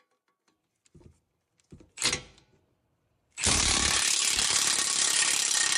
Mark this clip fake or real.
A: fake